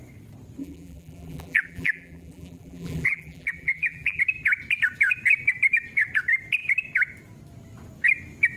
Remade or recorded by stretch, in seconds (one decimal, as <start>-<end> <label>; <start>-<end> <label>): 0.0-0.6 recorded; 0.6-4.2 remade; 4.2-8.6 recorded